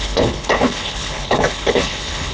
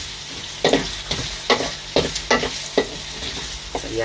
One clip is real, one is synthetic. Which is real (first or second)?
second